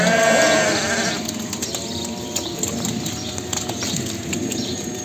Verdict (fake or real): real